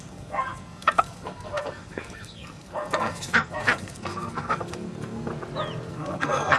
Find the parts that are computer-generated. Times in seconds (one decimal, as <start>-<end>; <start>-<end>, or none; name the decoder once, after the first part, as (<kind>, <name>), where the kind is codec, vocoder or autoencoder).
0.0-5.3 (codec, SNAC); 5.9-6.6